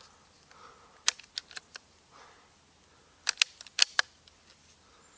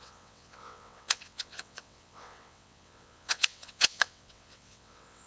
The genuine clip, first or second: first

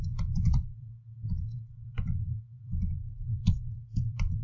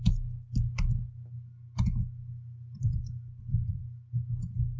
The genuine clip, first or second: second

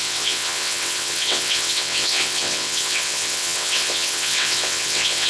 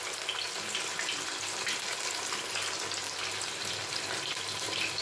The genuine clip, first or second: second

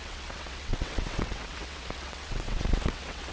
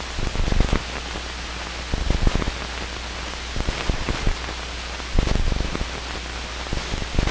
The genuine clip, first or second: second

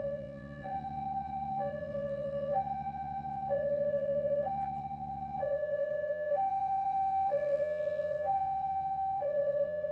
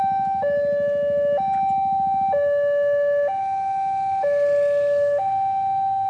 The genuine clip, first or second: second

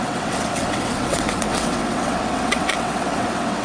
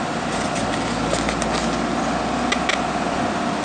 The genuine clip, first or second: second